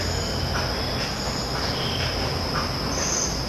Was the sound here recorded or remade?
recorded